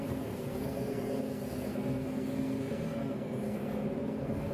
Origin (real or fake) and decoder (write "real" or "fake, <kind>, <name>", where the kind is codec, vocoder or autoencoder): fake, codec, SNAC